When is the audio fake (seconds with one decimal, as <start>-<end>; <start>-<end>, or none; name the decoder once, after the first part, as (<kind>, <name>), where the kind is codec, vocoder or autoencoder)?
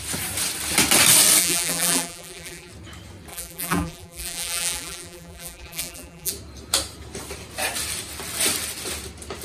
1.4-2.7 (vocoder, BigVGAN v2); 3.3-6.3